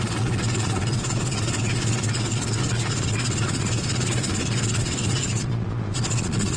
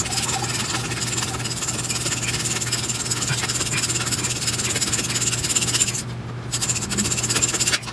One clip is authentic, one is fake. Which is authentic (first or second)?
second